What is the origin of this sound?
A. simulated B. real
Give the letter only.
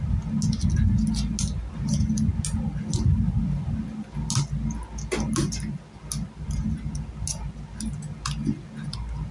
B